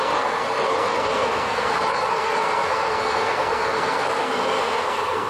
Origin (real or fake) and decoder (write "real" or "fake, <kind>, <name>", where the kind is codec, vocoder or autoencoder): fake, codec, SNAC